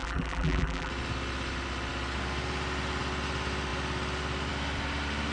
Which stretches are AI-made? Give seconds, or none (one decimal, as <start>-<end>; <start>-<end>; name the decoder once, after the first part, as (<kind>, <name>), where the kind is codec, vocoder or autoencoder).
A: 0.0-0.9 (vocoder, BigVGAN v2)